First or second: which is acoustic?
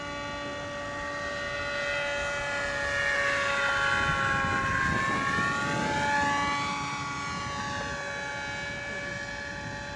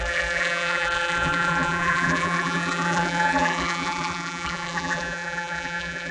first